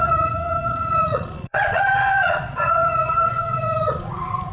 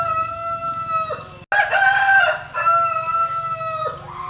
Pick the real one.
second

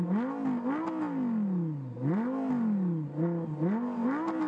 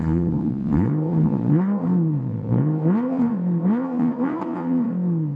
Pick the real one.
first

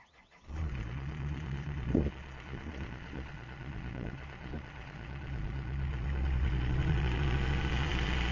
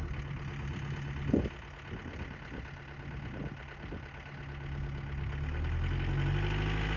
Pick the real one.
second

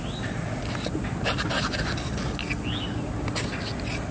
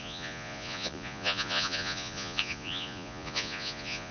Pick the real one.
first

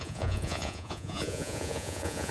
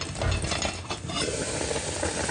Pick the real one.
second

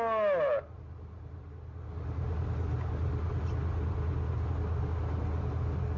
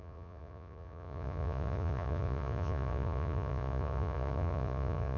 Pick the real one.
first